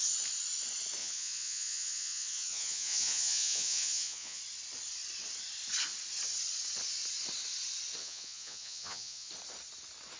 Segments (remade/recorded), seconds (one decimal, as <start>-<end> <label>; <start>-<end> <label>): 0.0-1.0 recorded; 1.0-4.4 remade; 4.4-8.0 recorded; 8.0-9.3 remade; 9.3-10.2 recorded